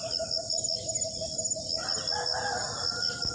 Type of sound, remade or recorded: recorded